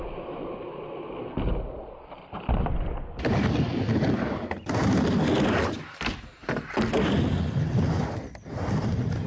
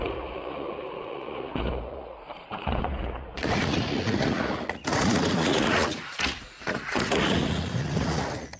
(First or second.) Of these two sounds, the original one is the first